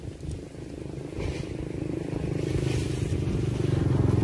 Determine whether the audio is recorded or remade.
recorded